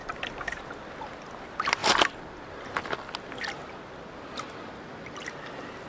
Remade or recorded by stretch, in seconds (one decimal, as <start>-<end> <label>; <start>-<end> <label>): 0.0-5.9 recorded